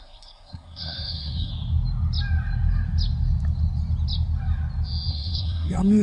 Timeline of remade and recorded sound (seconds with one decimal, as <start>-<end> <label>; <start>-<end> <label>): 0.0-1.5 remade; 1.5-5.1 recorded; 5.1-6.0 remade